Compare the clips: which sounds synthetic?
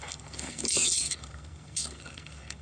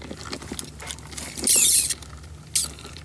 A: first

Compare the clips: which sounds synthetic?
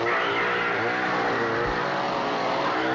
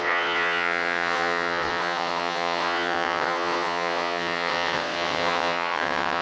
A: second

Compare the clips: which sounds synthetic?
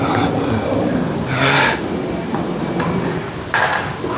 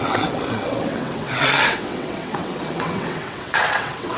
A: second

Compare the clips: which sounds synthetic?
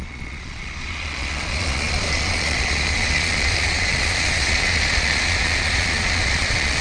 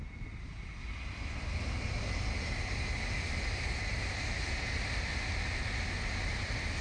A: first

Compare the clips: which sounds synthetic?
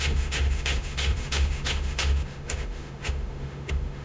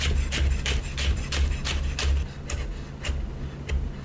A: first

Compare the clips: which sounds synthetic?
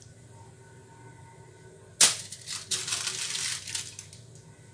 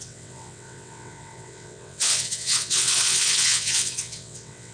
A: second